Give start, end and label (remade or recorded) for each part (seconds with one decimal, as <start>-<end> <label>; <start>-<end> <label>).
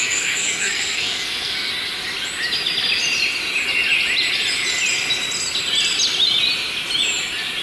0.0-1.7 remade; 1.7-7.6 recorded